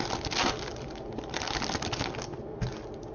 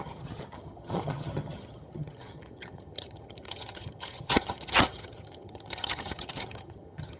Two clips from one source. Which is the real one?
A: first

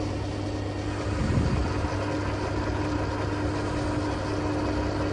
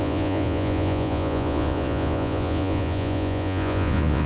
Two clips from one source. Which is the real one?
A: first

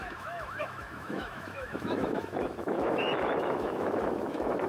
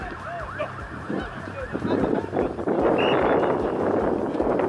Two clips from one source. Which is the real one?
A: second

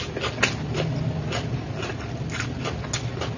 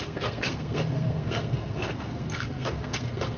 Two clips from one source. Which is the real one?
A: first